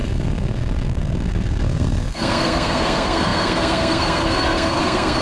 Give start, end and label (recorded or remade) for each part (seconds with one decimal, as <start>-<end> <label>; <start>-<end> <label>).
0.0-5.2 remade